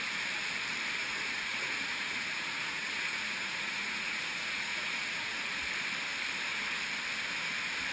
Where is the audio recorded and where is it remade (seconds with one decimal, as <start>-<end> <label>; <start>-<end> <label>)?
0.0-1.0 recorded; 1.0-5.6 remade; 5.6-7.9 recorded